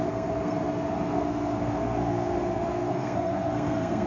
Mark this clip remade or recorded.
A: remade